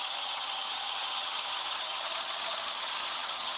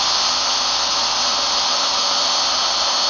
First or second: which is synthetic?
first